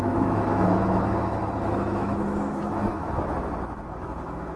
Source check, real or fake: fake